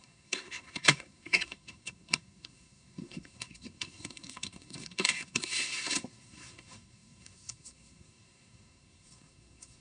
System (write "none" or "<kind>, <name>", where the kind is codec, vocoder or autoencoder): codec, SNAC